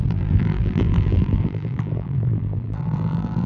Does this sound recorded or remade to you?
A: remade